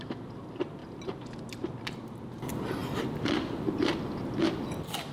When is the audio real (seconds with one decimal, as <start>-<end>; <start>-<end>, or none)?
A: 0.0-5.1